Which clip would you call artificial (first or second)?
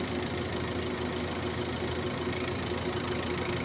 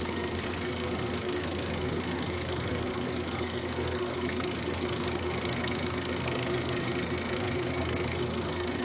second